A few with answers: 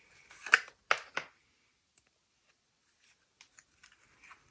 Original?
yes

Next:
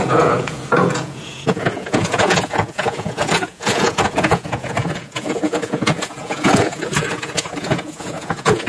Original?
no